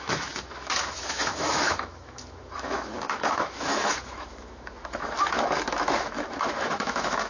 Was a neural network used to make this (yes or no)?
yes